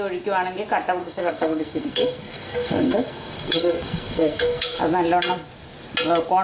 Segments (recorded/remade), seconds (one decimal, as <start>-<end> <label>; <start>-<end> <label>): 0.0-1.0 recorded; 1.0-4.8 remade; 4.8-6.4 recorded